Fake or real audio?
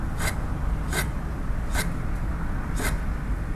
real